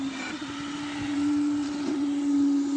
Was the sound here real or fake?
real